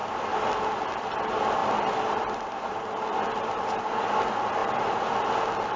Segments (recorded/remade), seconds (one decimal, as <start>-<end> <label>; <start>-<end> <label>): 0.0-0.8 remade; 0.8-1.6 recorded; 1.6-3.2 remade; 3.2-4.6 recorded; 4.6-5.2 remade; 5.2-5.8 recorded